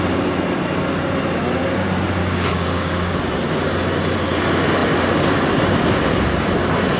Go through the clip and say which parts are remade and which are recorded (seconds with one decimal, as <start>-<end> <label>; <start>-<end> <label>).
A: 0.0-2.2 recorded; 2.2-3.2 remade; 3.2-7.0 recorded